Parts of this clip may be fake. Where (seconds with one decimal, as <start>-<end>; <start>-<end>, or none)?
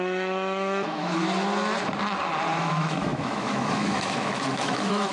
0.0-1.2; 2.6-5.1